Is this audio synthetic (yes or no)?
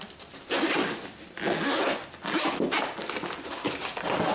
no